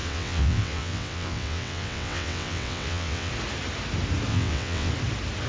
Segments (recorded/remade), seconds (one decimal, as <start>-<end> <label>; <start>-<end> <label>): 0.0-3.3 remade; 3.3-4.3 recorded; 4.3-4.9 remade; 4.9-5.5 recorded